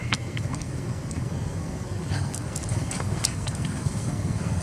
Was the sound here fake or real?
fake